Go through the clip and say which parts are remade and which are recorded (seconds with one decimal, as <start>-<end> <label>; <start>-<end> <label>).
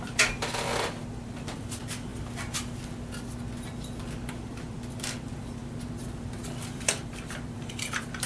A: 0.0-2.1 remade; 2.1-4.3 recorded; 4.3-5.6 remade; 5.6-6.2 recorded; 6.2-8.3 remade